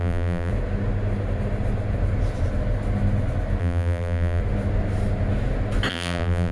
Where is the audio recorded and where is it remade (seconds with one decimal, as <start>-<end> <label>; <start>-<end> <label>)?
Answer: 0.0-0.5 remade; 0.5-3.6 recorded; 3.6-4.4 remade; 4.4-5.9 recorded; 5.9-6.5 remade